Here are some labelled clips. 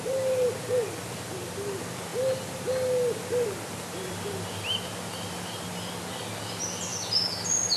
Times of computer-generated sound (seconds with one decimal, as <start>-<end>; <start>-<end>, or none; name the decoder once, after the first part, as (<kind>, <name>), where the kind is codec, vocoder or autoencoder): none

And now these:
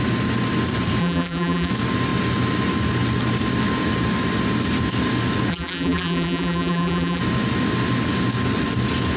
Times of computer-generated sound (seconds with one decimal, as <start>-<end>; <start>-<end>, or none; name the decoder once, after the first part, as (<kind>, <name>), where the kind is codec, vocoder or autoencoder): 1.0-1.7 (vocoder, BigVGAN v2); 5.5-7.2

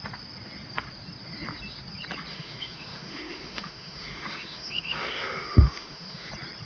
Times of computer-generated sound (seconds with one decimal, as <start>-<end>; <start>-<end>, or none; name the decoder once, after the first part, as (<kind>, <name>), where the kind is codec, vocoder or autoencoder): 2.3-6.3 (autoencoder, DAC-VAE)

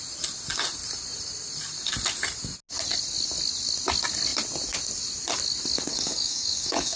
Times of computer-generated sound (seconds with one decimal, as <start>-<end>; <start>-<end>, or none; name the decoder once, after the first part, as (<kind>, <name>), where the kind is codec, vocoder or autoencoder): 5.9-7.0 (codec, DAC)

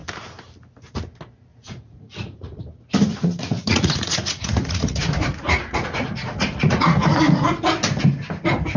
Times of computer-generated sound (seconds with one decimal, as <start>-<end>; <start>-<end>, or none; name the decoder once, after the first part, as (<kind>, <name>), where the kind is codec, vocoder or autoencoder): 1.5-2.6 (vocoder, Vocos); 3.1-7.2

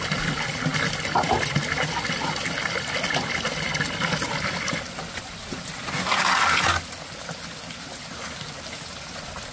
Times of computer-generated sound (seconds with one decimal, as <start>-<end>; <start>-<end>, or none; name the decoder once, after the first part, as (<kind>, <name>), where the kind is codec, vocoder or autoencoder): none

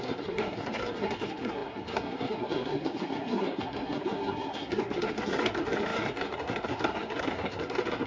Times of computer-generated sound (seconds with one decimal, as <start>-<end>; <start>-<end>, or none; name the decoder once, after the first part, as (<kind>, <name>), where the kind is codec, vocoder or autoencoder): 0.0-8.1 (codec, SNAC)